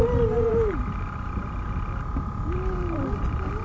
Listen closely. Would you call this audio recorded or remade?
recorded